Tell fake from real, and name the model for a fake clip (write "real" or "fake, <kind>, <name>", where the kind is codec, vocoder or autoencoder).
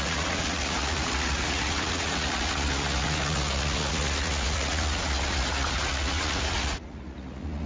fake, vocoder, Vocos